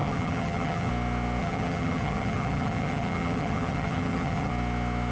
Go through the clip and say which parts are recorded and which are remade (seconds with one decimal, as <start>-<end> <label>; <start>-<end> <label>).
0.0-0.9 remade; 0.9-1.4 recorded; 1.4-4.5 remade; 4.5-5.1 recorded

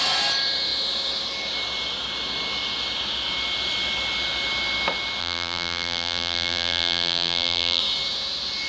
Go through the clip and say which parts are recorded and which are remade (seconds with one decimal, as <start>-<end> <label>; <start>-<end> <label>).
0.0-5.2 recorded; 5.2-7.8 remade; 7.8-8.7 recorded

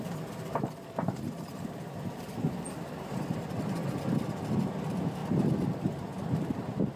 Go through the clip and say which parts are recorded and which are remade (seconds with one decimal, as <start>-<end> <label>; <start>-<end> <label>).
0.0-7.0 recorded

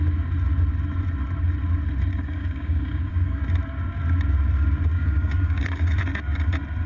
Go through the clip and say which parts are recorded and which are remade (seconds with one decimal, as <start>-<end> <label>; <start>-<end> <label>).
0.0-2.1 recorded; 2.1-3.4 remade; 3.4-4.9 recorded; 4.9-6.0 remade; 6.0-6.9 recorded

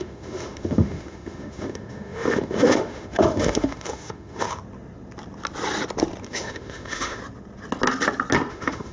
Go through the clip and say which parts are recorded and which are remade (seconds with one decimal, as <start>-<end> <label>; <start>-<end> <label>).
0.0-4.6 remade; 4.6-6.2 recorded; 6.2-7.2 remade; 7.2-8.5 recorded; 8.5-8.9 remade

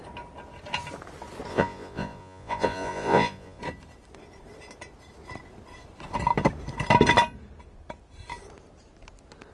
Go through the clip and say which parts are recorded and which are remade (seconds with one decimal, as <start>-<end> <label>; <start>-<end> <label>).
0.0-1.5 recorded; 1.5-3.6 remade; 3.6-9.5 recorded

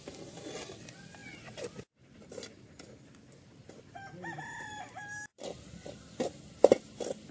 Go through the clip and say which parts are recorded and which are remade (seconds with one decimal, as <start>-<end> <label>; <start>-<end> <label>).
0.0-7.3 recorded